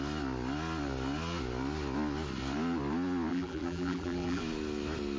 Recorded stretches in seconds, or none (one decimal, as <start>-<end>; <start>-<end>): 0.0-3.3; 4.4-5.2